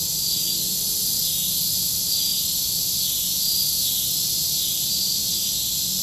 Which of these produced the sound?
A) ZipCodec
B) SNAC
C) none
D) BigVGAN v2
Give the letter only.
D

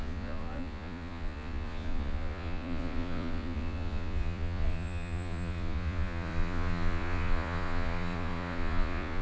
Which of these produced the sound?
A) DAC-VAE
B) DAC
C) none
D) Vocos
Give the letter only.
D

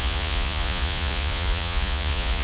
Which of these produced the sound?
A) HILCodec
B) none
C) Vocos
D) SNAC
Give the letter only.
C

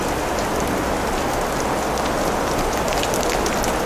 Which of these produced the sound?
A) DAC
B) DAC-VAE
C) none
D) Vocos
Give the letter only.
C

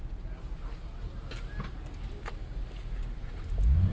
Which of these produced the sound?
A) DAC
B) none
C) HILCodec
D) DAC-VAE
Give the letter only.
B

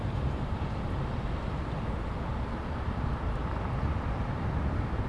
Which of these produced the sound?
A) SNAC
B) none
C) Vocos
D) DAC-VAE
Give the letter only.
B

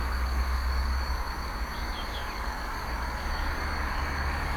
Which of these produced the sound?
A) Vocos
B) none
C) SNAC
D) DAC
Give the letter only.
D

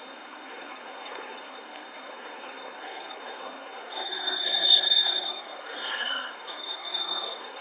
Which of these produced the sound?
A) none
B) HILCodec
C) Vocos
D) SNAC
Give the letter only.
D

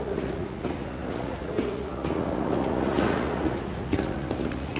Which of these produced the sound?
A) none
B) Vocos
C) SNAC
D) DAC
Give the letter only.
B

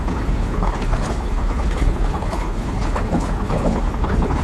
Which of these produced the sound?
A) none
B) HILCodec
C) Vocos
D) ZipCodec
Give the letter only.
B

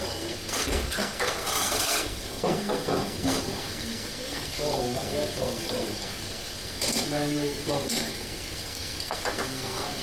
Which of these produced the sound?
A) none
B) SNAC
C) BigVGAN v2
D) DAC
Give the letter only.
B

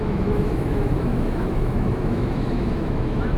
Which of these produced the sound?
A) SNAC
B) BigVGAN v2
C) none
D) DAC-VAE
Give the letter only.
D